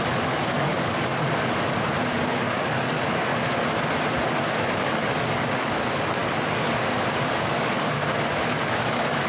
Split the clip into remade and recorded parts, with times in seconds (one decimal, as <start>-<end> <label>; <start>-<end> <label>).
0.0-1.1 remade; 1.1-2.1 recorded; 2.1-3.3 remade; 3.3-4.3 recorded; 4.3-6.2 remade; 6.2-7.3 recorded; 7.3-9.3 remade